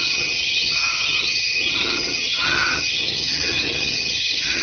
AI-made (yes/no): yes